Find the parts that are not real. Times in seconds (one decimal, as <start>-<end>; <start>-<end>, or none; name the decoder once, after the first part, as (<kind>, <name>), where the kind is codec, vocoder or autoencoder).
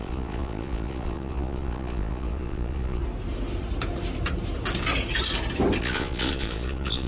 0.0-3.0 (vocoder, Vocos); 5.8-7.1